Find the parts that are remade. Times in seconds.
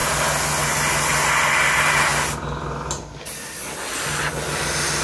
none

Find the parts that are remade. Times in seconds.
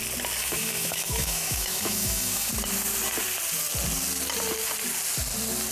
0.4-2.5 (autoencoder, DAC-VAE)